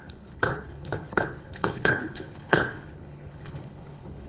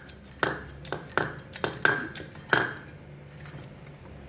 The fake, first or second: first